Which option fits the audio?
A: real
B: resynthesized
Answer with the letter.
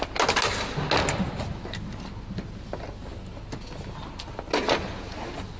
A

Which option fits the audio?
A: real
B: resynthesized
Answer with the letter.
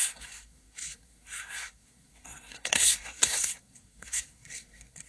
B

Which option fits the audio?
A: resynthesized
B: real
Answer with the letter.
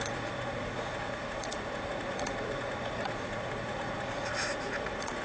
A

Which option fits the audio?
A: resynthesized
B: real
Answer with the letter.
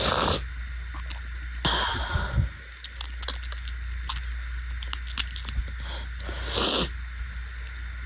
B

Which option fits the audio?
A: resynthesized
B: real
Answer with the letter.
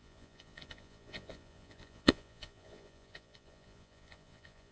A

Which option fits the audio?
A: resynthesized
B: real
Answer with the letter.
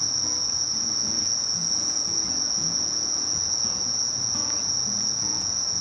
A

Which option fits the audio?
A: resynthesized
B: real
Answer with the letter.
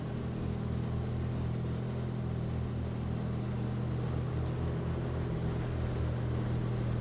B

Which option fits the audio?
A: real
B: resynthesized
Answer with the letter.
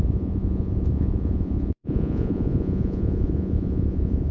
B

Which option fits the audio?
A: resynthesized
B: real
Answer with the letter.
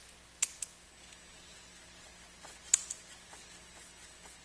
B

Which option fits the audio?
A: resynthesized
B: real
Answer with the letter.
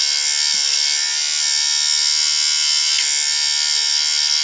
B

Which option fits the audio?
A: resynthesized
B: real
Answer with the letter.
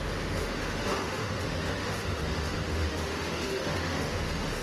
A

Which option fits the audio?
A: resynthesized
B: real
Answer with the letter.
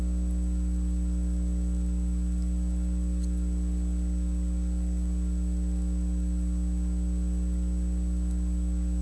B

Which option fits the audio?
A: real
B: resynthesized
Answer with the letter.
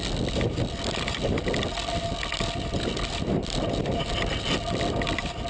A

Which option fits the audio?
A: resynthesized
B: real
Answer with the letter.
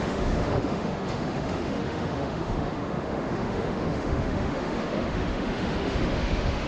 A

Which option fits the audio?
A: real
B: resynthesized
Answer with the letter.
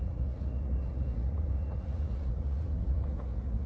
B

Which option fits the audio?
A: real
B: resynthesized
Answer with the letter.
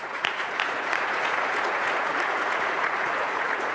B